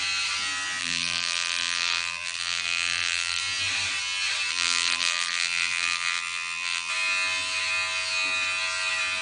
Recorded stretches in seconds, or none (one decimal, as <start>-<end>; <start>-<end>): 0.0-0.8; 3.4-4.5; 6.9-9.2